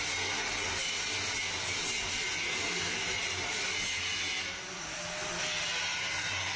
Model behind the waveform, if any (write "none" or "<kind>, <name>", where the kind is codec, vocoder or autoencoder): none